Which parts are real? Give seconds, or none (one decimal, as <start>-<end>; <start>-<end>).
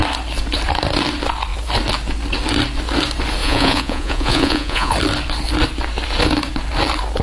0.0-3.4; 4.9-7.2